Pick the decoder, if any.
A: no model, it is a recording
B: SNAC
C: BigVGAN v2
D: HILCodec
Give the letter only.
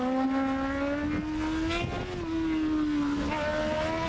A